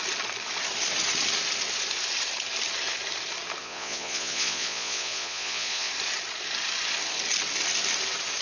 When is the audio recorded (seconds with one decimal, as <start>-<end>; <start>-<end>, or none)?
0.0-3.6; 5.9-8.4